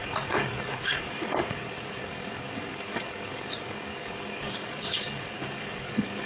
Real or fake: fake